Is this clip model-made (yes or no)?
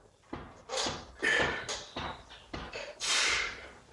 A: no